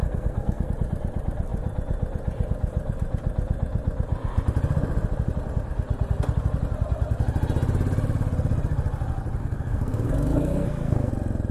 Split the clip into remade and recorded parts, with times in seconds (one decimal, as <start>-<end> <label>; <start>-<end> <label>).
0.0-0.7 remade; 0.7-9.4 recorded; 9.4-11.1 remade; 11.1-11.5 recorded